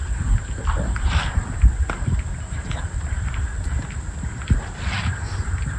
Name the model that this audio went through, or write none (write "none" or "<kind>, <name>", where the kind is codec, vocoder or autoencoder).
none